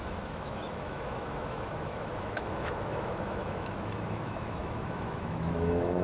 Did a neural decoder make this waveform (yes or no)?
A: yes